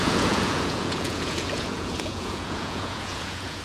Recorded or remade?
remade